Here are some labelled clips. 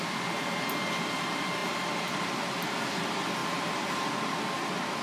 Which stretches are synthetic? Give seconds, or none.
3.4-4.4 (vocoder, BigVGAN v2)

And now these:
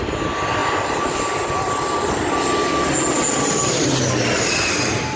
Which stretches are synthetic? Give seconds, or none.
none

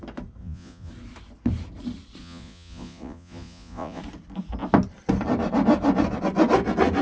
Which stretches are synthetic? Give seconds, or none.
0.4-0.9 (vocoder, Vocos); 2.2-4.0

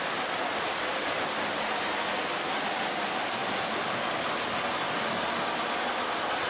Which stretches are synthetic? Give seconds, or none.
none